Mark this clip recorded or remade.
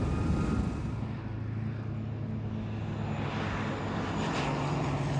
recorded